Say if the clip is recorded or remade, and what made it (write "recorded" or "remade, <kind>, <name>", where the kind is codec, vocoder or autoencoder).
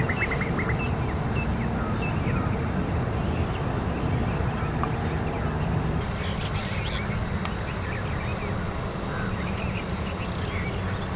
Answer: recorded